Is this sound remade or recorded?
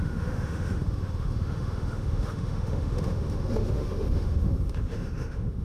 remade